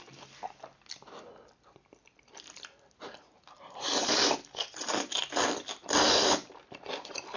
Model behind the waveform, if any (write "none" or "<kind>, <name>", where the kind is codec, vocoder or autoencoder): none